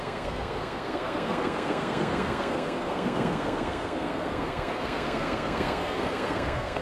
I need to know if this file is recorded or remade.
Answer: remade